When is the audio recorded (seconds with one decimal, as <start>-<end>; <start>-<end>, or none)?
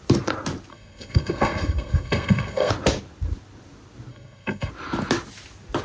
0.0-0.7; 2.7-4.1; 4.7-5.8